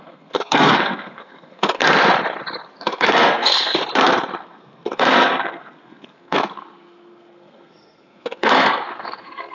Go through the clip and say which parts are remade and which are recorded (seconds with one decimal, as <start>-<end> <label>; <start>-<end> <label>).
0.0-1.8 remade; 1.8-2.8 recorded; 2.8-3.8 remade; 3.8-4.4 recorded; 4.4-9.5 remade